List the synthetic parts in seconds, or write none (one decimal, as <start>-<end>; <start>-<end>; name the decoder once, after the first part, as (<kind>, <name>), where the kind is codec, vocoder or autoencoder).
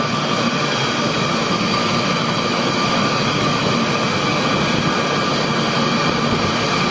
1.4-3.7 (autoencoder, DAC-VAE)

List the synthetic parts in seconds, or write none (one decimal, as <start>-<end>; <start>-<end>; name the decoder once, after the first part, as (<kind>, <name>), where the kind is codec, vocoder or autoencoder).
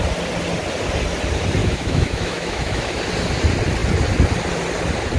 1.6-3.0 (autoencoder, DAC-VAE)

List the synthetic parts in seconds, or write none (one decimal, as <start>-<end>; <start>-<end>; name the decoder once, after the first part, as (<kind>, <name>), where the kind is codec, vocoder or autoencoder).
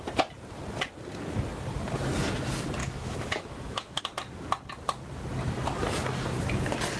2.8-4.0 (autoencoder, DAC-VAE)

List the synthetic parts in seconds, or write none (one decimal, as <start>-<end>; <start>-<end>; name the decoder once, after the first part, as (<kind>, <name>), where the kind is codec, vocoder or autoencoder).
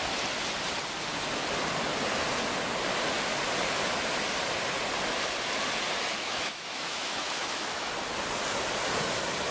6.1-7.9 (autoencoder, DAC-VAE)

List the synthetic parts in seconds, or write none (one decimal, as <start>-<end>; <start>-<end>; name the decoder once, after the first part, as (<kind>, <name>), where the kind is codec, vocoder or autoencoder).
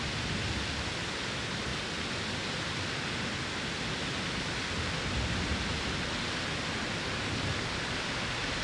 none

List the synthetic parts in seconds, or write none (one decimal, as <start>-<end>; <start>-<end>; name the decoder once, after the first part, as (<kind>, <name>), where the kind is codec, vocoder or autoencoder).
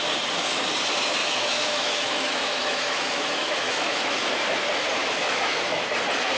1.2-4.3 (autoencoder, DAC-VAE); 5.0-5.8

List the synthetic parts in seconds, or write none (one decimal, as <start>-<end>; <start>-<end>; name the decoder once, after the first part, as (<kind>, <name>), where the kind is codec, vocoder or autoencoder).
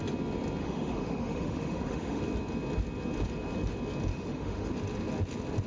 0.6-2.2 (autoencoder, DAC-VAE); 4.1-4.7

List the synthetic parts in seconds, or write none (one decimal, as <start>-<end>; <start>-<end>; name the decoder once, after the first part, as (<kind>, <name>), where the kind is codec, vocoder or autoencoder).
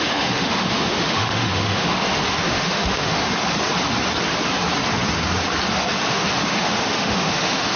0.0-3.2 (autoencoder, DAC-VAE); 6.1-7.8